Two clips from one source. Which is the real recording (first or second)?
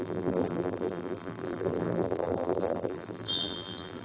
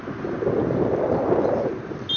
second